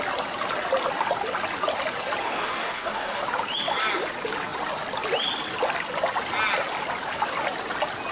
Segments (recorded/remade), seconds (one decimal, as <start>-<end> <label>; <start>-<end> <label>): 0.0-2.2 recorded; 2.2-3.2 remade; 3.2-8.1 recorded